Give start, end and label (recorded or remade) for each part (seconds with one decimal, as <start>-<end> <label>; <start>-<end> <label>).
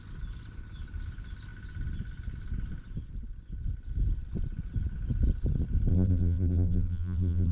0.0-5.9 recorded; 5.9-7.5 remade